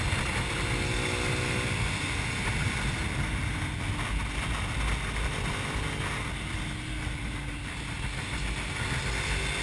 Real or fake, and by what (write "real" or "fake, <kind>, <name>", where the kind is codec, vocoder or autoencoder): real